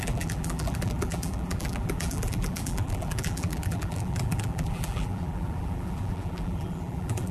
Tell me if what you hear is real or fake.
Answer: fake